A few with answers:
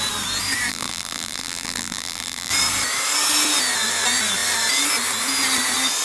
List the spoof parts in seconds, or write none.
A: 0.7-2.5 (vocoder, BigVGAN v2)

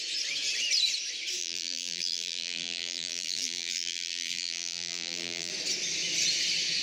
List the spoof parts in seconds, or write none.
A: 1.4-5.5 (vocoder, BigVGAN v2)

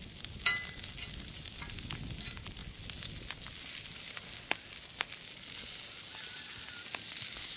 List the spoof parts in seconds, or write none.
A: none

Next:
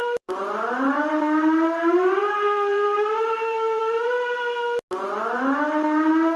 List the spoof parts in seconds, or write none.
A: 0.0-3.8 (vocoder, BigVGAN v2)

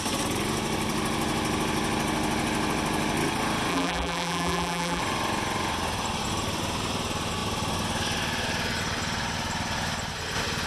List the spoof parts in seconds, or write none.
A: 3.7-5.0 (vocoder, BigVGAN v2)

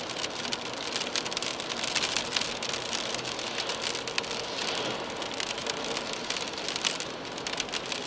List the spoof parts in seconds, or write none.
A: none